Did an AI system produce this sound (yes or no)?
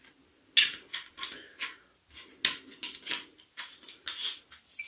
no